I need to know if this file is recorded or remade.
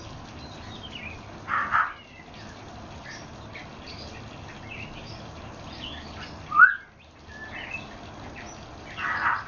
recorded